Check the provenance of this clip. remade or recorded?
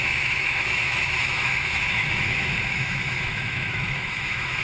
remade